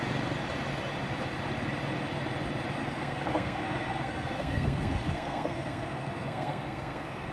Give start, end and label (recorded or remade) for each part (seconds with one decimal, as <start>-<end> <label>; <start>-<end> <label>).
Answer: 0.0-2.8 recorded; 2.8-7.3 remade